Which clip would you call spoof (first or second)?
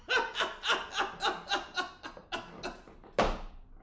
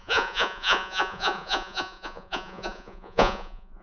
second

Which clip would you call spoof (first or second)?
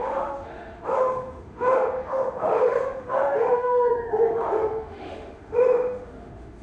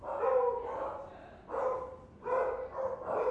first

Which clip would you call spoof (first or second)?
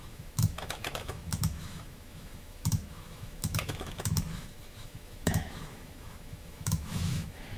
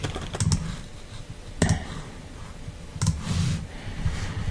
first